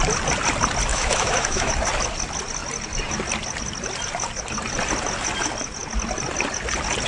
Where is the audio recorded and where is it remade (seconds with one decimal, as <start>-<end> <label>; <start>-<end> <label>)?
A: 0.0-0.9 recorded; 0.9-1.7 remade; 1.7-7.1 recorded